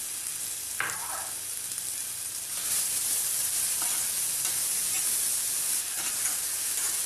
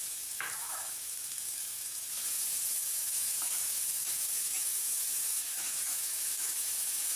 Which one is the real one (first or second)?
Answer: first